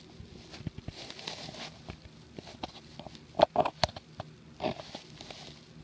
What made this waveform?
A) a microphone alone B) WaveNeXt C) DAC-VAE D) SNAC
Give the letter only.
A